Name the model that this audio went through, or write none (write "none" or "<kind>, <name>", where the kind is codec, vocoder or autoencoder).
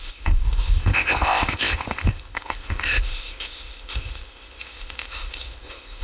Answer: codec, ZipCodec